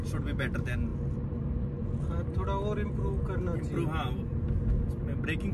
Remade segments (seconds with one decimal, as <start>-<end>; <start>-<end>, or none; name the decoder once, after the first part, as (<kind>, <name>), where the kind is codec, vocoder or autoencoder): none